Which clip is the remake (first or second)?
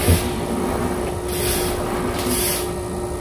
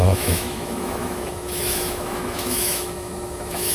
second